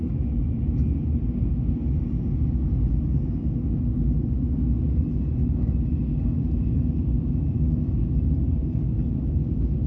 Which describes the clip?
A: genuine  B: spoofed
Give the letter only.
A